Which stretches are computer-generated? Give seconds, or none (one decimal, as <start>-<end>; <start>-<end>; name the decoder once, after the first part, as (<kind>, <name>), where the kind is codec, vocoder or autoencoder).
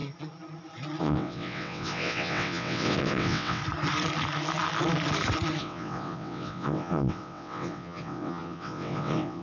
1.0-3.6 (vocoder, WaveNeXt); 5.6-9.4